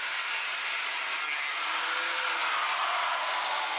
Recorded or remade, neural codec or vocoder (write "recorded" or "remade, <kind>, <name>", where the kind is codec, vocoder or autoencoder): recorded